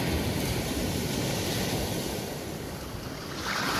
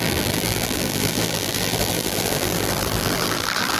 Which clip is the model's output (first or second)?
second